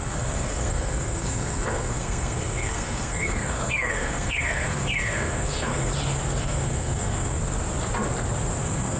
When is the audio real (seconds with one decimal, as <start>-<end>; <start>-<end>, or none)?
5.9-6.4; 7.4-8.6